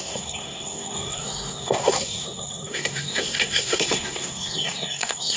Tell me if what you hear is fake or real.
fake